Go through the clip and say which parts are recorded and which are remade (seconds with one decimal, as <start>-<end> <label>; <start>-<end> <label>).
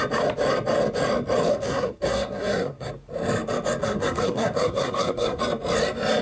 0.0-1.5 recorded; 1.5-2.9 remade; 2.9-3.8 recorded; 3.8-5.4 remade; 5.4-6.2 recorded